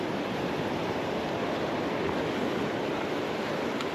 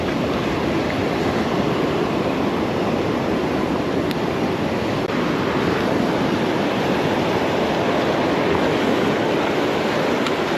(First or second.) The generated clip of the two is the first